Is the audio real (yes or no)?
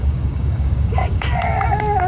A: no